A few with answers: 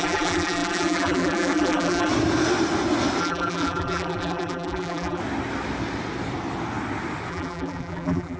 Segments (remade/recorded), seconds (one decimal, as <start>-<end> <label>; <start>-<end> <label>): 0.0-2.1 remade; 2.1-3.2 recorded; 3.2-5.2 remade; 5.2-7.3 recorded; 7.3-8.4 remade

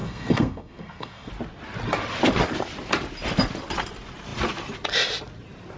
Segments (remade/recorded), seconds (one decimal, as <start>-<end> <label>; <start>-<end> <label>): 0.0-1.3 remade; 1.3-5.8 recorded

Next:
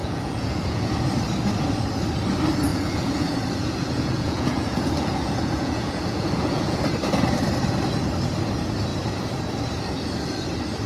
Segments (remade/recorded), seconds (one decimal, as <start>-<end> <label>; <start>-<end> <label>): 0.0-1.0 remade; 1.0-2.7 recorded; 2.7-6.8 remade; 6.8-10.9 recorded